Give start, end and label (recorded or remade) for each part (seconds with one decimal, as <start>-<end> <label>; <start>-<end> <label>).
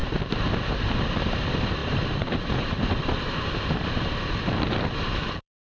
0.0-5.7 remade